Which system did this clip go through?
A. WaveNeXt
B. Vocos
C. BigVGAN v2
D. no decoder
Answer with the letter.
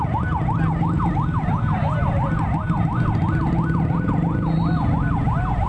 D